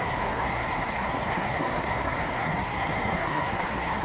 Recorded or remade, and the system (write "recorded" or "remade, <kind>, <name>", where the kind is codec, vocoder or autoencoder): remade, codec, SNAC